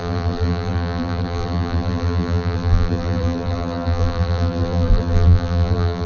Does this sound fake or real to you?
fake